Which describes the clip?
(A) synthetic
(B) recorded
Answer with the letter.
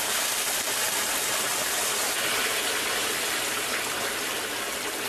B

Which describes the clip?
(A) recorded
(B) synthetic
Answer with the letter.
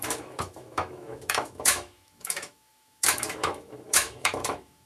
B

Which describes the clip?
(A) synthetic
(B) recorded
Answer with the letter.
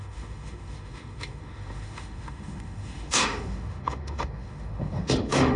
A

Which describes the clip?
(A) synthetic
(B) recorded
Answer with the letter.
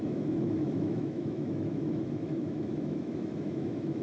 A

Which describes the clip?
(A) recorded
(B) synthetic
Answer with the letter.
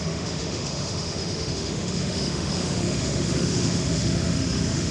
B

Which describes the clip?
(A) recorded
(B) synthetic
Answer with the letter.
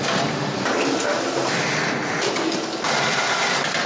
A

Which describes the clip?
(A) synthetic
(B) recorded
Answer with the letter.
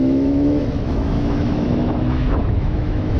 A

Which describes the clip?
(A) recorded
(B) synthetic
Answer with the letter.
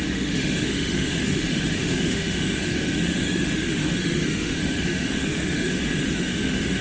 B